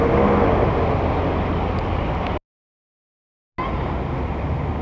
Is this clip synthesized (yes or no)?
no